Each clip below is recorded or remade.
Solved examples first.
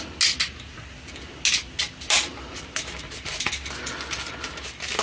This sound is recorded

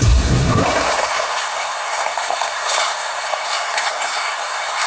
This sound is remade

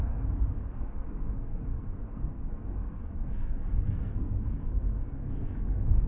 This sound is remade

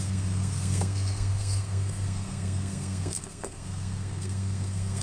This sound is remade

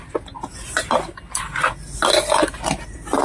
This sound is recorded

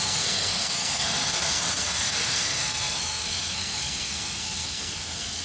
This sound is remade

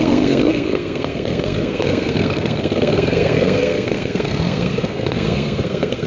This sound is remade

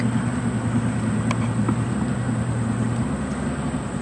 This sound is recorded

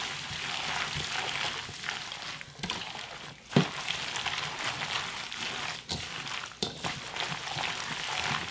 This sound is recorded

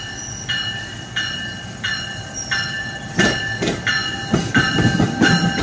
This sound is recorded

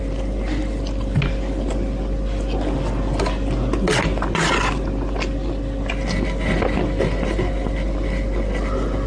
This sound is recorded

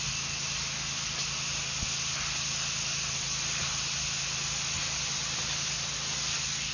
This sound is recorded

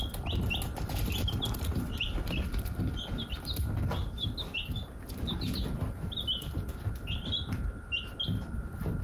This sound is recorded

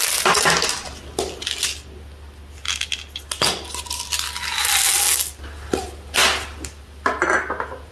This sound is recorded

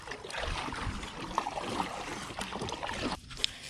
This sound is recorded